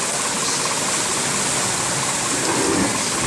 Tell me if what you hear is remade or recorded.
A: recorded